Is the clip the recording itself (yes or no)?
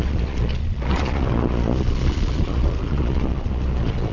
no